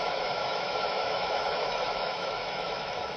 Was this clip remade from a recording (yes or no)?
yes